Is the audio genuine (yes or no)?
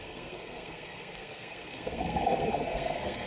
no